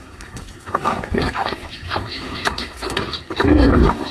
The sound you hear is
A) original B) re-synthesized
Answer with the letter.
B